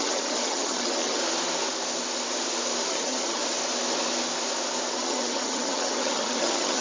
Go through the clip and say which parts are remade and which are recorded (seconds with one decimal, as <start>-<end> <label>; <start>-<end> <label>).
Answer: 0.0-1.2 remade; 1.2-2.9 recorded; 2.9-3.4 remade; 3.4-4.9 recorded; 4.9-6.8 remade